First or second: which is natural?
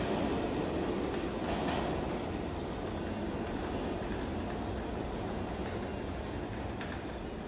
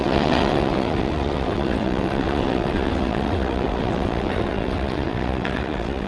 first